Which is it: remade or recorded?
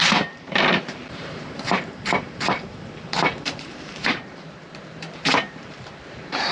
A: remade